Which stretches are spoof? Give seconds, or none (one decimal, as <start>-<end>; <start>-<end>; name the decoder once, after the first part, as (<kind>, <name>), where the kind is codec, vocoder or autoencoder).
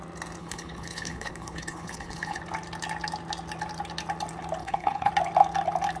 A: 0.4-2.4 (codec, HILCodec); 4.6-5.1